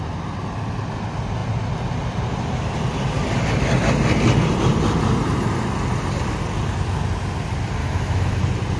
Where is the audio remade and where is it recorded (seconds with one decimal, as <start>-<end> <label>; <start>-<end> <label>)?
0.0-7.8 recorded; 7.8-8.4 remade; 8.4-8.8 recorded